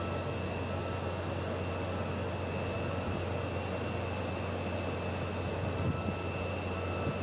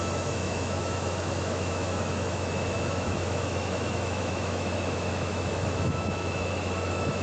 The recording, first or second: first